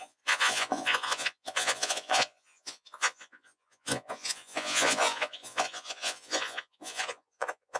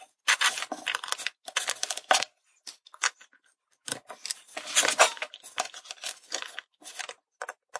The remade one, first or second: first